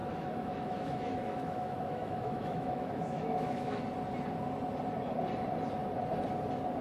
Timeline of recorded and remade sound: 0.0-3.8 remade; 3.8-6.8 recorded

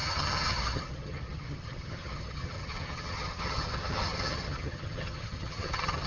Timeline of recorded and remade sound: 0.0-6.1 remade